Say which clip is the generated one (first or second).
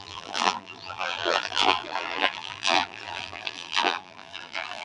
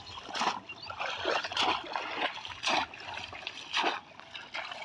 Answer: first